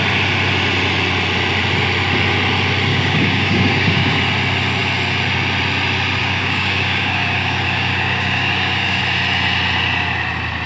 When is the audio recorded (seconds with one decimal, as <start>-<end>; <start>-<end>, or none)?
0.0-2.9; 4.2-6.2; 9.0-10.7